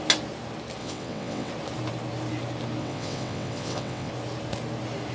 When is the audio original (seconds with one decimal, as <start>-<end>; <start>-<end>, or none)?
0.0-0.8; 1.5-2.8; 4.1-5.1